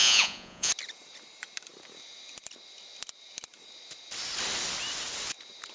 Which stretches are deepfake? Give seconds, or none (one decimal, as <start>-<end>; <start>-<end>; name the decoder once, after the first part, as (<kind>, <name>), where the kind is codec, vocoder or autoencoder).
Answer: 0.0-0.7 (vocoder, Vocos)